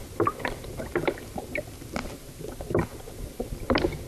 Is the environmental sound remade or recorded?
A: recorded